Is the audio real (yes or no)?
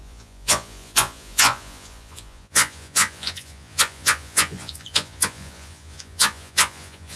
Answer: no